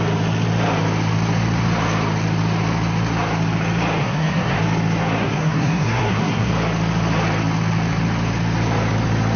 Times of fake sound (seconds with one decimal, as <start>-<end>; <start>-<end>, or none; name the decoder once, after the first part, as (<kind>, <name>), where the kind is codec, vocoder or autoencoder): 4.0-4.6 (codec, SNAC); 5.2-6.5